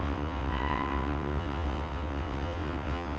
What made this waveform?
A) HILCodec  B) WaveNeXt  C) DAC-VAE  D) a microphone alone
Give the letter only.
B